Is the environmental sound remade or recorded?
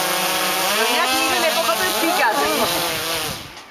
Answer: recorded